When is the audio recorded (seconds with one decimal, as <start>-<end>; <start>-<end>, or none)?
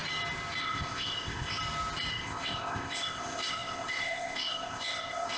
0.0-0.6; 1.6-2.1